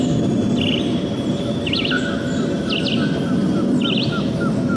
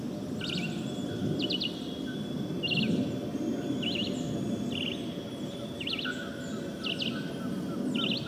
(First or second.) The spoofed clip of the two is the first